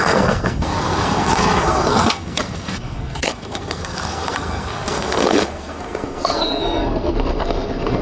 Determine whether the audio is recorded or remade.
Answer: remade